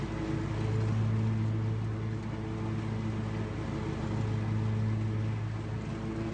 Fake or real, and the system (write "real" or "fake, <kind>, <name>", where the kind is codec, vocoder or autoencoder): real